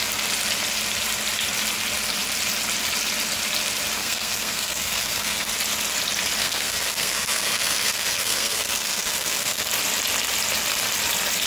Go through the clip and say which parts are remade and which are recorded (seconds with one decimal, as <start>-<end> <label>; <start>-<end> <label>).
0.0-4.0 recorded; 4.0-5.5 remade; 5.5-6.4 recorded; 6.4-9.7 remade; 9.7-11.5 recorded